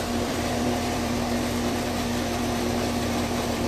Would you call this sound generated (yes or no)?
yes